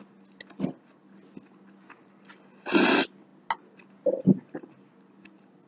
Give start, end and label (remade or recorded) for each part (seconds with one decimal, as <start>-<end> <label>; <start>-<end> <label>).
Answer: 0.0-5.7 recorded